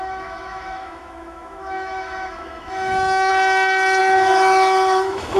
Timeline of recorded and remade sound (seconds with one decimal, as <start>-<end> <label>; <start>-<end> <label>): 0.0-3.3 remade; 3.3-4.0 recorded; 4.0-5.4 remade

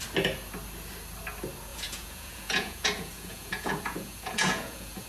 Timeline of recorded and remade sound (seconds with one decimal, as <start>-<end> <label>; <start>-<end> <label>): 0.0-1.7 recorded; 1.7-5.1 remade

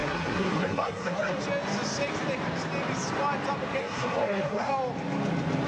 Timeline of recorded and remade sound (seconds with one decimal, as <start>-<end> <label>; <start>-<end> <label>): 0.0-1.4 remade; 1.4-3.8 recorded; 3.8-4.7 remade; 4.7-5.7 recorded